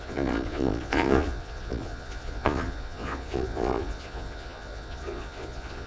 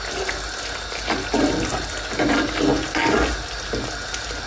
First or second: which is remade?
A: first